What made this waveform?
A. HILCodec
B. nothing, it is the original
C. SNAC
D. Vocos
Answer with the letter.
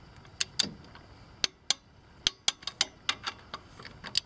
B